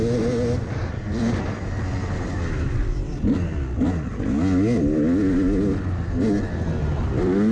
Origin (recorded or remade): recorded